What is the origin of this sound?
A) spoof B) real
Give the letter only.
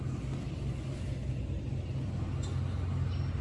B